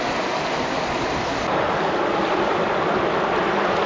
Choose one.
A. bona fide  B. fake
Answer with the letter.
A